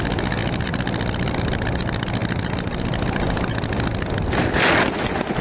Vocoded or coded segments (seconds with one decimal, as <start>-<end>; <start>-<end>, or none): none